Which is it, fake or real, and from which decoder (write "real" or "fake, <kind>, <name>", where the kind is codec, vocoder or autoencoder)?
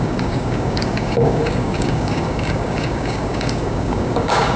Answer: fake, codec, DAC